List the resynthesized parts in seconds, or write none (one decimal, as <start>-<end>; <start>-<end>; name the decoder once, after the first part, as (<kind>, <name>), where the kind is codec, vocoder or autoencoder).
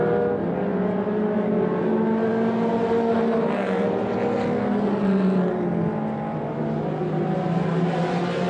none